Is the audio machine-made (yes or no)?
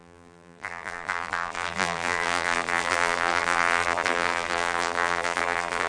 yes